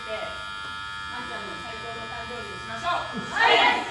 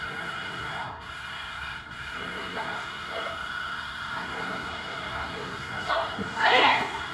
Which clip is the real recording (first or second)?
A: first